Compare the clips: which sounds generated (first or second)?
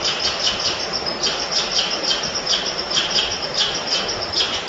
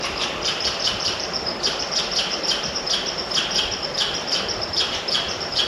second